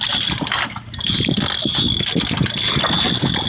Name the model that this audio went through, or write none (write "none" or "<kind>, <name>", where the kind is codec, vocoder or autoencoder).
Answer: none